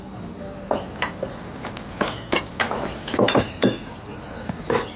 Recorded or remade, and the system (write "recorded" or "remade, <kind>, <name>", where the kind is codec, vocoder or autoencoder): recorded